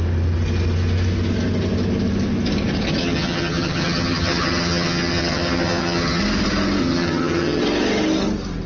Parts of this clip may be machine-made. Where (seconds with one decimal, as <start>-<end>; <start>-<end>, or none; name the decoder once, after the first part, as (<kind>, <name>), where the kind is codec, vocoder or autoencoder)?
3.0-6.2 (vocoder, HiFi-GAN); 6.8-7.6